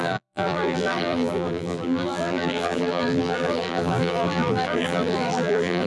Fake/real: fake